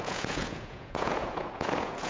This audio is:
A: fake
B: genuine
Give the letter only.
A